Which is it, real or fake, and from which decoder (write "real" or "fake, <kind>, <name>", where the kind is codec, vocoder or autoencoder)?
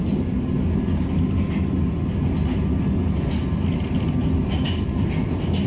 real